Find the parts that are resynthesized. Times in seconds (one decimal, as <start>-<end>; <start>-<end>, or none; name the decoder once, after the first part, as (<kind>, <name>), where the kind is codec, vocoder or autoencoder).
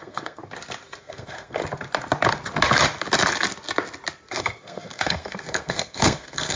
0.0-0.4 (codec, SNAC); 1.0-1.6; 4.3-6.6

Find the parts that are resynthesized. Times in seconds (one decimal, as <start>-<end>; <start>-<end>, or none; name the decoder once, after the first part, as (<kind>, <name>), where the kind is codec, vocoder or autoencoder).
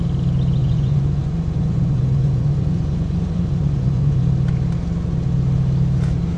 0.6-4.2 (vocoder, Vocos)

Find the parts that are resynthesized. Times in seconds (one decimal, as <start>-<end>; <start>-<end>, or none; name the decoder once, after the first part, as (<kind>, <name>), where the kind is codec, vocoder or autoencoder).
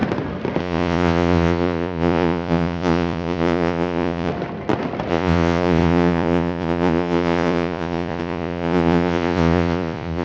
0.6-4.3 (vocoder, Vocos); 5.1-10.2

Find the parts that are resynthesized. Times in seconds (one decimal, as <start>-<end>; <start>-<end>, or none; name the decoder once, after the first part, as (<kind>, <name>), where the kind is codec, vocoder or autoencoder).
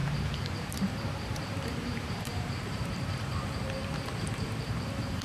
0.0-5.2 (vocoder, BigVGAN v2)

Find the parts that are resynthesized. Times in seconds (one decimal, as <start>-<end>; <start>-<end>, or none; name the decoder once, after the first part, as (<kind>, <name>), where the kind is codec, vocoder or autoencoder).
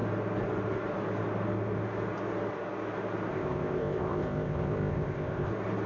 3.3-5.5 (codec, ZipCodec)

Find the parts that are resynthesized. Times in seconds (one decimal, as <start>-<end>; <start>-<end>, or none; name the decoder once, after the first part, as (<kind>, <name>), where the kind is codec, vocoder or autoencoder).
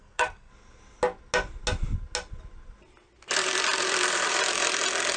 0.0-0.5 (codec, SNAC)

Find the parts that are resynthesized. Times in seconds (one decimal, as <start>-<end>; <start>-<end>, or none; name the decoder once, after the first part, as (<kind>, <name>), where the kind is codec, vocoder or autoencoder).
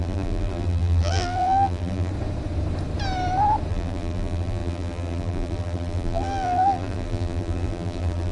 0.0-2.1 (vocoder, BigVGAN v2); 3.7-8.3